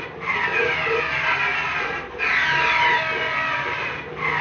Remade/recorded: recorded